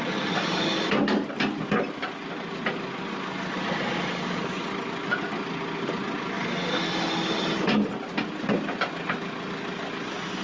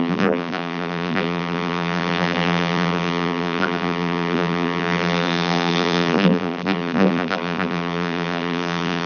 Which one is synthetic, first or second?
second